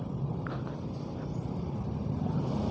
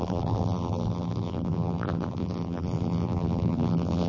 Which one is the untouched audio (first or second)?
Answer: first